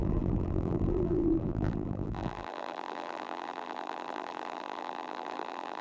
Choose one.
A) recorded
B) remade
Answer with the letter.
B